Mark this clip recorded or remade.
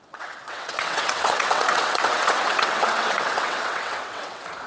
remade